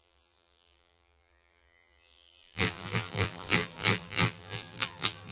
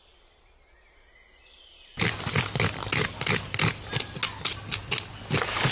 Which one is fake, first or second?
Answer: first